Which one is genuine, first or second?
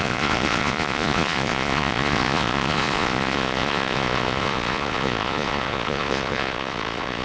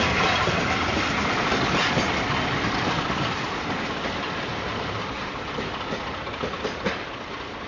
second